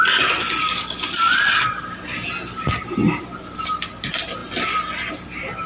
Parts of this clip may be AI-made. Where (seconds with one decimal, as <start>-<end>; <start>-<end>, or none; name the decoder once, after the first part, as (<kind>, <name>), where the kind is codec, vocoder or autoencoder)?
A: none